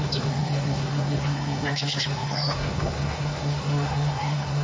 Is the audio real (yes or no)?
no